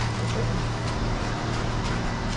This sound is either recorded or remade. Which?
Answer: recorded